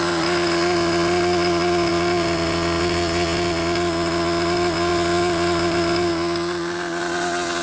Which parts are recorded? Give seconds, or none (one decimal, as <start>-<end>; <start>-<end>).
0.0-7.6